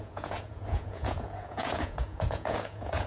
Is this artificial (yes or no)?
yes